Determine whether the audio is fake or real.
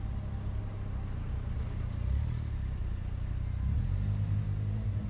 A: real